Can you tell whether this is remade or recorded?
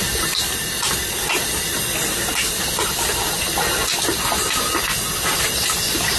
recorded